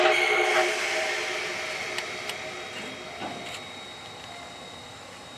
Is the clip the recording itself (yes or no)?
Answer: yes